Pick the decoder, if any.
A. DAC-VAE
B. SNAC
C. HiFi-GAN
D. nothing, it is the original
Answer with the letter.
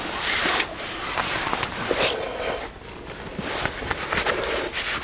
D